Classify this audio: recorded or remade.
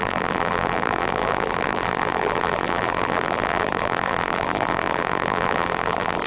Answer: remade